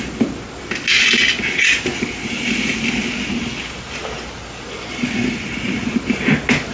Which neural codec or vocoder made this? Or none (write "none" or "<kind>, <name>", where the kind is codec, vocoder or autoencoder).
none